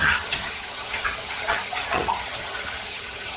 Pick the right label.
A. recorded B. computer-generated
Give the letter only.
B